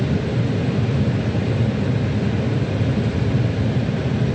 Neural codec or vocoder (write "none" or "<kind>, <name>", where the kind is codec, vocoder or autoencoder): none